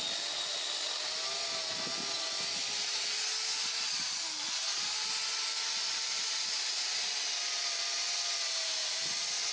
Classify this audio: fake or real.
real